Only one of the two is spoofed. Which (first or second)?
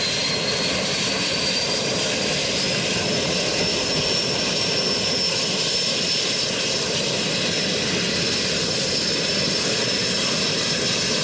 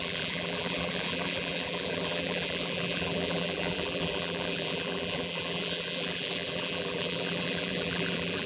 second